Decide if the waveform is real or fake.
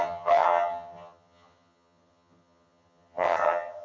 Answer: fake